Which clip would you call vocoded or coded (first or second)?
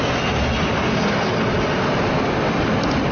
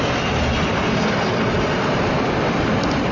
second